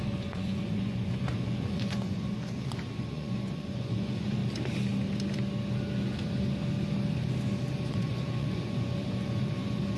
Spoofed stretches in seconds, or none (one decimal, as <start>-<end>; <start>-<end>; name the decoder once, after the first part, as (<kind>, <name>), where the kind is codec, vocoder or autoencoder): 0.0-4.4 (vocoder, Vocos); 7.9-10.0